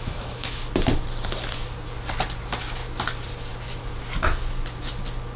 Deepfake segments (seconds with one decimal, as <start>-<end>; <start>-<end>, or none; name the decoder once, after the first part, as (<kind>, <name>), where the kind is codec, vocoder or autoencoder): 0.0-0.6 (autoencoder, DAC-VAE)